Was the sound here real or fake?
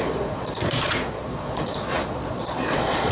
fake